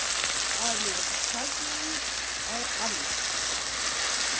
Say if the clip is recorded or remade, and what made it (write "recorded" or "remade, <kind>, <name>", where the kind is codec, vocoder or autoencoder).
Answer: recorded